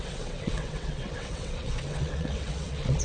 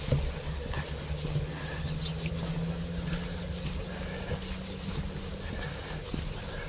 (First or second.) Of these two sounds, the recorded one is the second